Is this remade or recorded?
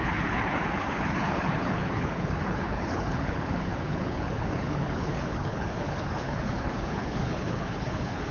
remade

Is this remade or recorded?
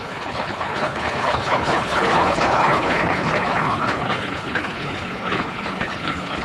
remade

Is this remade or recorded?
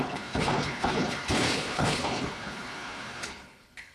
remade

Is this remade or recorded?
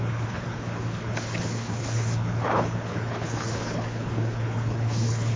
remade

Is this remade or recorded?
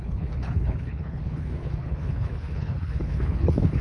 remade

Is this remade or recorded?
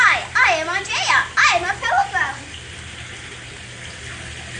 recorded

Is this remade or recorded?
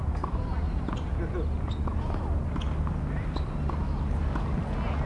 recorded